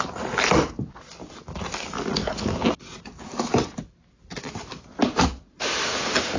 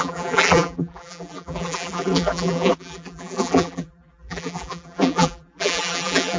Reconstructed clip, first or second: second